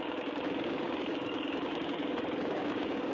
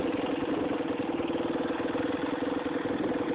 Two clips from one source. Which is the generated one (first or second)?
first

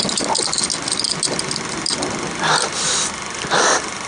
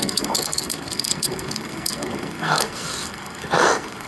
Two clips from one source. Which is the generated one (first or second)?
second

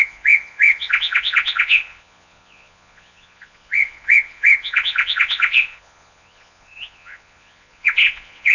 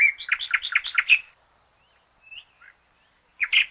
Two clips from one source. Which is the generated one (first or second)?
first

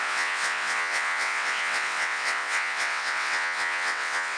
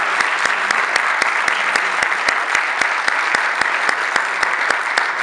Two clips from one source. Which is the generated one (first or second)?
first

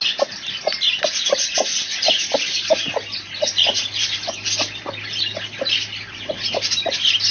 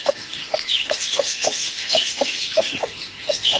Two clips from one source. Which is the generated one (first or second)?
second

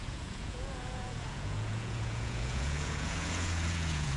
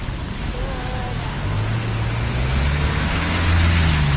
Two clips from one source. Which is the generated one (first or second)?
first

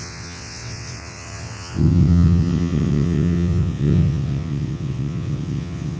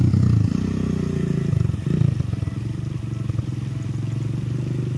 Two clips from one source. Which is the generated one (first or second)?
first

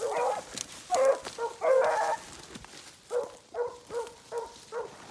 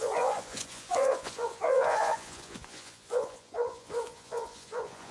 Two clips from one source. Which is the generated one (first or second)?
second